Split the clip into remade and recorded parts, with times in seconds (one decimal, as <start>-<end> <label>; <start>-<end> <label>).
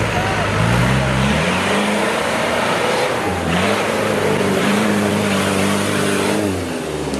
0.0-0.8 recorded; 0.8-5.1 remade; 5.1-7.2 recorded